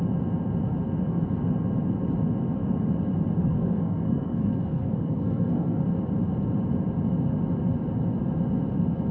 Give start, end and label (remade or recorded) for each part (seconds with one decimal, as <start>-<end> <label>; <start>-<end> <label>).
0.0-3.4 recorded; 3.4-5.8 remade; 5.8-9.1 recorded